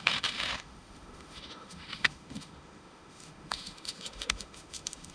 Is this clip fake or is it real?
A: fake